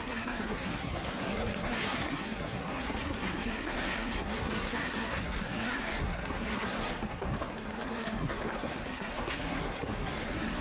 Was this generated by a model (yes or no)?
yes